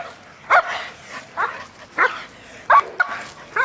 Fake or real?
real